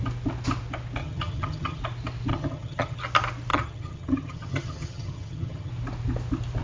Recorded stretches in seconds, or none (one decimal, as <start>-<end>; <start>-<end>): 0.0-1.0; 1.8-2.3; 3.0-3.5; 5.7-6.6